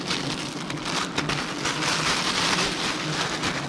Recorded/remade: recorded